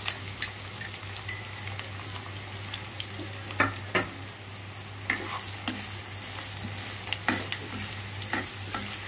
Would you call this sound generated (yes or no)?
no